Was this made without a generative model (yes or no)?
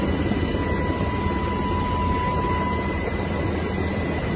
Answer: yes